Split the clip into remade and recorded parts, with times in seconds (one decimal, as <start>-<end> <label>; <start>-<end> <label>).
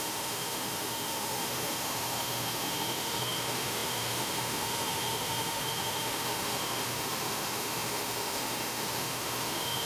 0.0-9.9 remade